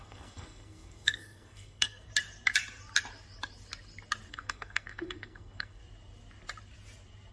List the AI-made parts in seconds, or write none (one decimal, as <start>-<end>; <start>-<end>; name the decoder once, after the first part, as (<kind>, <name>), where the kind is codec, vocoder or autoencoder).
0.0-2.1 (codec, SNAC); 4.3-5.8